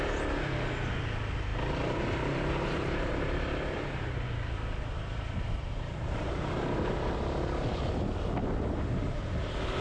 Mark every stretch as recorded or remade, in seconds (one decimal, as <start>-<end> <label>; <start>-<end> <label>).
0.0-1.5 recorded; 1.5-6.3 remade; 6.3-9.8 recorded